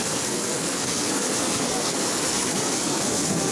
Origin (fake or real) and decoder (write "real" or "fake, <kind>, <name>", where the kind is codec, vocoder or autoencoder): fake, codec, SNAC